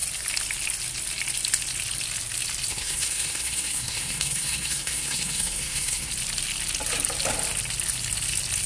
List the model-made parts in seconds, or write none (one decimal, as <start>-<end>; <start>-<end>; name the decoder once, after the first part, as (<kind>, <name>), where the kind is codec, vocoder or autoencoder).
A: 2.7-6.1 (codec, SNAC)